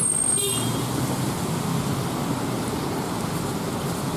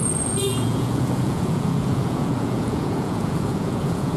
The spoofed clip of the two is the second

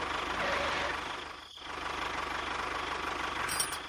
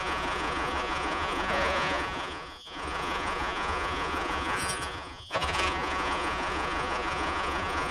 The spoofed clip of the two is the second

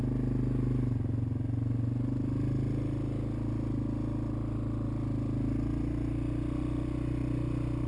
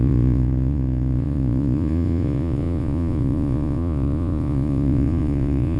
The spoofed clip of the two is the second